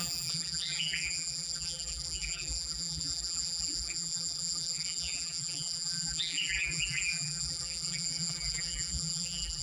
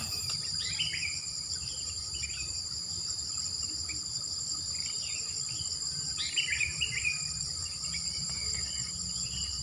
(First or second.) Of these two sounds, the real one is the second